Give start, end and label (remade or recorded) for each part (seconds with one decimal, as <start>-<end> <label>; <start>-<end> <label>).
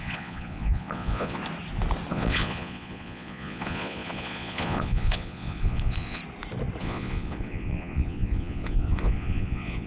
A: 0.0-1.4 remade; 1.4-2.1 recorded; 2.1-6.2 remade; 6.2-6.8 recorded; 6.8-9.9 remade